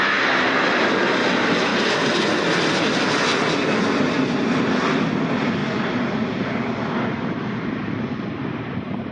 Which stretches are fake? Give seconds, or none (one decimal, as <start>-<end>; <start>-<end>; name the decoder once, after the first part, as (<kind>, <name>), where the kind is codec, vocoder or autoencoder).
0.0-1.7 (vocoder, BigVGAN v2); 2.3-3.3; 4.0-5.6; 8.3-9.1